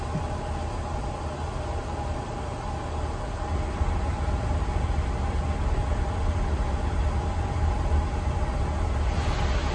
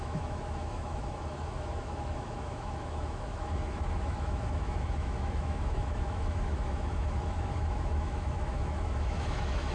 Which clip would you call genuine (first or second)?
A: first